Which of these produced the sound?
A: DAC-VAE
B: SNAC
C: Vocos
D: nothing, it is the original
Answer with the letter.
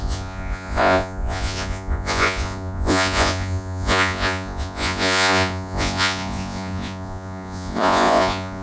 C